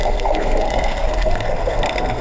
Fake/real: fake